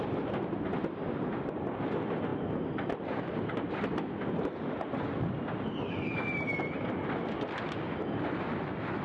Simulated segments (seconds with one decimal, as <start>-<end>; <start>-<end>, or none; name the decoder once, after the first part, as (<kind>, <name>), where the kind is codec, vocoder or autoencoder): none